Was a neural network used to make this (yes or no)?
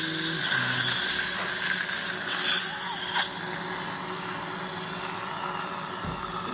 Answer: no